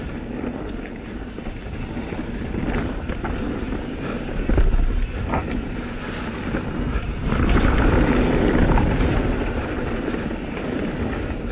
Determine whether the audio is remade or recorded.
recorded